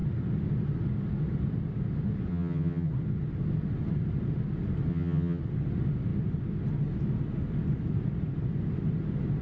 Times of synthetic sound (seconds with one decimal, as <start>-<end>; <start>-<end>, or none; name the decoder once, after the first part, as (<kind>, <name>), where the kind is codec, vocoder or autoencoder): 2.3-2.9 (vocoder, HiFi-GAN); 4.9-5.4